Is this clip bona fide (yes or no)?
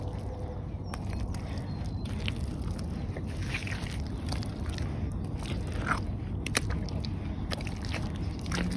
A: yes